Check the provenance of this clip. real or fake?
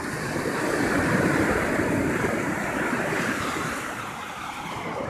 real